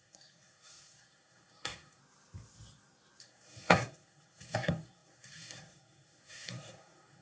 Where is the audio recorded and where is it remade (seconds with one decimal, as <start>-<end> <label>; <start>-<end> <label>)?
0.0-2.0 remade; 2.0-3.2 recorded; 3.2-7.2 remade